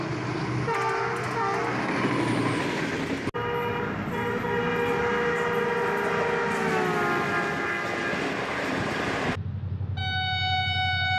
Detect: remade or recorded recorded